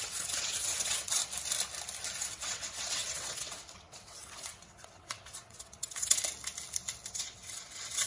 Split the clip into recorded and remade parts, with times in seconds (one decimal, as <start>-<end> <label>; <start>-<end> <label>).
0.0-1.2 remade; 1.2-2.2 recorded; 2.2-6.2 remade; 6.2-7.1 recorded; 7.1-8.1 remade